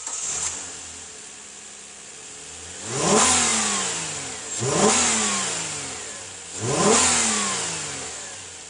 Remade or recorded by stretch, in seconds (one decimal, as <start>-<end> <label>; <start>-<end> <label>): 0.0-8.7 recorded